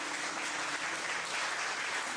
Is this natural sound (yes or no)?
yes